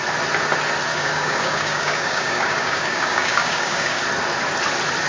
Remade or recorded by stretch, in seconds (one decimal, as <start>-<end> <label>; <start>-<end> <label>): 0.0-0.9 recorded; 0.9-4.0 remade; 4.0-5.1 recorded